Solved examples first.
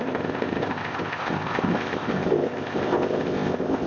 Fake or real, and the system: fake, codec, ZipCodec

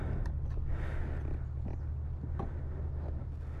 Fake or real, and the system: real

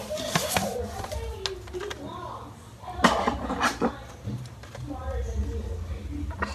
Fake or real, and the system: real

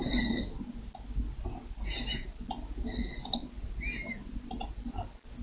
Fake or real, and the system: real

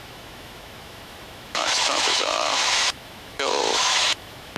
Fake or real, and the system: fake, autoencoder, DAC-VAE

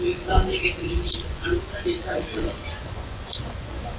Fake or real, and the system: fake, vocoder, Vocos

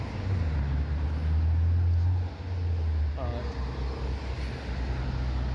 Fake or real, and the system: real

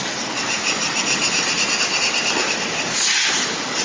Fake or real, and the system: real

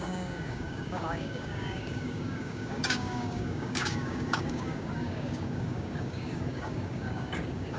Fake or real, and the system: fake, codec, DAC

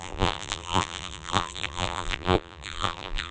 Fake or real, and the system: fake, vocoder, BigVGAN v2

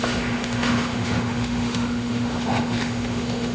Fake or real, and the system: fake, autoencoder, DAC-VAE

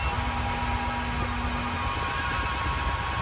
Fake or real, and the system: real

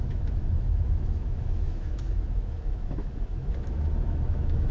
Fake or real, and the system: fake, autoencoder, DAC-VAE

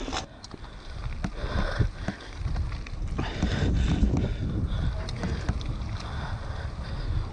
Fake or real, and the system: real